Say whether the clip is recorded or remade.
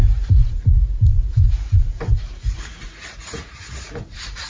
remade